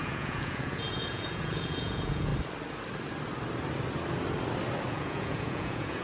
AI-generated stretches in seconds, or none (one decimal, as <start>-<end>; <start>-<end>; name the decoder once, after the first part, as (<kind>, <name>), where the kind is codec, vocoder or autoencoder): 0.0-2.3 (vocoder, Vocos); 4.9-6.0